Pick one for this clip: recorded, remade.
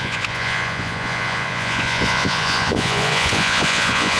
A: remade